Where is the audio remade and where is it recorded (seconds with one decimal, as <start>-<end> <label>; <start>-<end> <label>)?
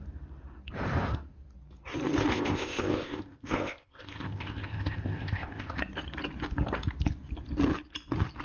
0.0-2.3 recorded; 2.3-5.8 remade; 5.8-8.4 recorded